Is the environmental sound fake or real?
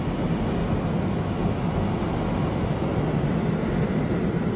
real